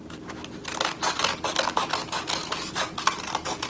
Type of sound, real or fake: real